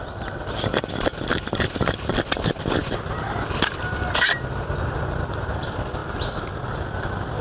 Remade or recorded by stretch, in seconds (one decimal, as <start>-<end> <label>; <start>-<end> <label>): 0.0-6.0 remade; 6.0-7.4 recorded